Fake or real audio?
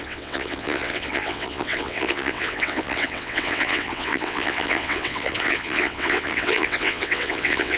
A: fake